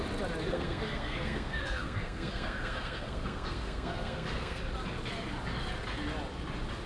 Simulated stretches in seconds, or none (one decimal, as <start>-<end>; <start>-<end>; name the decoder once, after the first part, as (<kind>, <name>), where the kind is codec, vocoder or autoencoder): 0.5-4.6 (codec, SNAC)